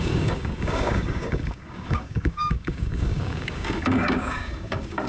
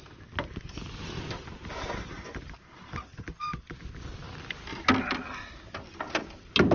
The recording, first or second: second